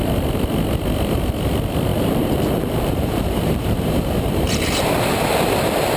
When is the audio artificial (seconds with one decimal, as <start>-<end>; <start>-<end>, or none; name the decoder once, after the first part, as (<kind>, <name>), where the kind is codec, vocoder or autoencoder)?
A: 1.9-4.5 (vocoder, BigVGAN v2)